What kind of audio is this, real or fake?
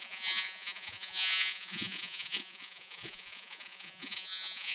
fake